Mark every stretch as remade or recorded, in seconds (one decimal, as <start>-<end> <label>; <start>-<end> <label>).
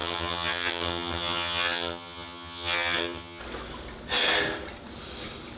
0.0-3.4 remade; 3.4-5.6 recorded